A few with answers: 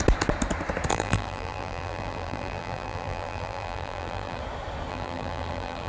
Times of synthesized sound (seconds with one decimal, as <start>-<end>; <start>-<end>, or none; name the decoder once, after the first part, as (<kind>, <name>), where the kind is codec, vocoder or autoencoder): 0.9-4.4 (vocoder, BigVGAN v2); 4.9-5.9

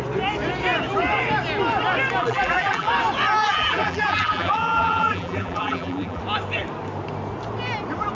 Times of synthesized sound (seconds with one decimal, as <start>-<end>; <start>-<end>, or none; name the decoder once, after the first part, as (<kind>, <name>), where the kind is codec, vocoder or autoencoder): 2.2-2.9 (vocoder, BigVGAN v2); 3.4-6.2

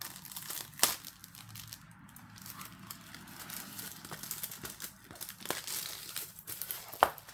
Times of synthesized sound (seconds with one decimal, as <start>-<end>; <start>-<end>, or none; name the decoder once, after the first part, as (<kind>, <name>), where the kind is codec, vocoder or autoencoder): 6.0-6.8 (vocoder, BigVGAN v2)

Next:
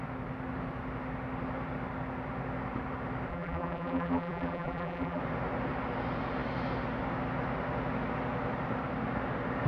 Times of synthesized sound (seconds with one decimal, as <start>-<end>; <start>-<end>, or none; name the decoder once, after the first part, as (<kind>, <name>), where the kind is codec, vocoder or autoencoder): 3.3-5.2 (vocoder, BigVGAN v2)

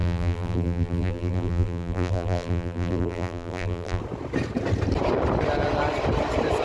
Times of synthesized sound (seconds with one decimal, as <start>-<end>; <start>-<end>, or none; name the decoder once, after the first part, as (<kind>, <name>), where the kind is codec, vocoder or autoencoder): 0.0-4.0 (vocoder, BigVGAN v2)

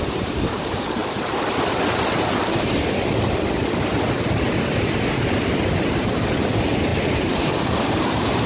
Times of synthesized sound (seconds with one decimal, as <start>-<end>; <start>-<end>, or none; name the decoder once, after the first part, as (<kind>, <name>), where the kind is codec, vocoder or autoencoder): 0.0-1.0 (vocoder, BigVGAN v2); 6.1-8.5